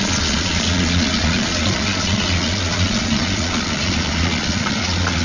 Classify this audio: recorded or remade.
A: remade